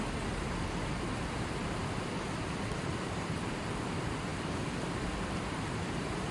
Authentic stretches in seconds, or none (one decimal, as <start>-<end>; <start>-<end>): 0.0-4.3